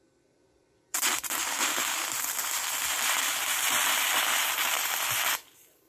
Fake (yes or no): yes